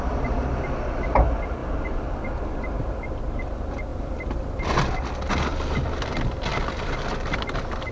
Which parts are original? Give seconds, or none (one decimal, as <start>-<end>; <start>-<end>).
0.0-3.9; 4.8-7.9